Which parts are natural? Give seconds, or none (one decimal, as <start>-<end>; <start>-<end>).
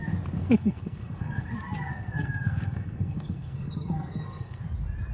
0.0-0.4; 1.5-1.9; 4.6-5.1